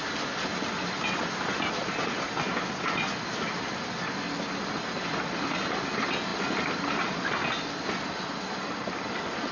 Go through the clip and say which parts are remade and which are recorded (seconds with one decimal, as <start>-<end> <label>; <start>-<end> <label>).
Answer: 0.0-9.5 recorded